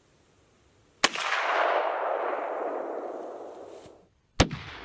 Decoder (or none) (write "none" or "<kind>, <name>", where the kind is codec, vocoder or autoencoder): none